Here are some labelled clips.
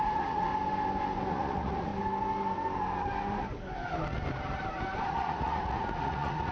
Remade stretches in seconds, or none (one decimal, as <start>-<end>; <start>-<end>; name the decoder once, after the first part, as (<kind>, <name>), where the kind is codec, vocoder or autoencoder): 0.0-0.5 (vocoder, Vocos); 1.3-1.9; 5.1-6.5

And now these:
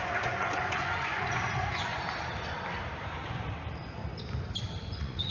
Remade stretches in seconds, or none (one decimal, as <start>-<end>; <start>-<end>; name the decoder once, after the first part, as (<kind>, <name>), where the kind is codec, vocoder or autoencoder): 0.0-1.9 (vocoder, Vocos); 4.8-5.3

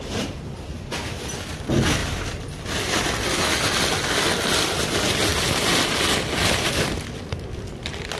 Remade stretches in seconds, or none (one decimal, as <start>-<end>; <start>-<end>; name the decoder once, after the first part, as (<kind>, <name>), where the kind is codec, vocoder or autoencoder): none

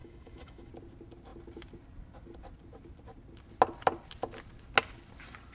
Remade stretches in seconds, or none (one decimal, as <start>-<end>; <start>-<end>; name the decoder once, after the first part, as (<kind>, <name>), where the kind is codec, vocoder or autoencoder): 0.0-0.7 (autoencoder, DAC-VAE)

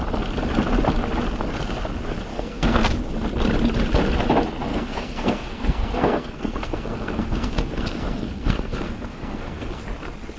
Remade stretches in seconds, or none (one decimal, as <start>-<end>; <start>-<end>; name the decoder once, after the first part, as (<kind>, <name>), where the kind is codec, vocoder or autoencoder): 2.3-2.9 (codec, SNAC); 4.7-9.8

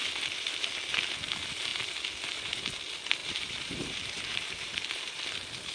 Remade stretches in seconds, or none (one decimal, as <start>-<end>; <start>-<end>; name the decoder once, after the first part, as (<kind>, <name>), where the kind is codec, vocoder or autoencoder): 0.0-0.5 (vocoder, BigVGAN v2); 3.2-5.2